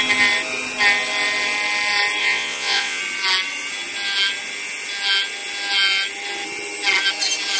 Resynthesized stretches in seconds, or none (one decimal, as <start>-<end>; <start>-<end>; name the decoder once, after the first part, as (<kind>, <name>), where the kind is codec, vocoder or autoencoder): 2.2-3.0 (vocoder, Vocos)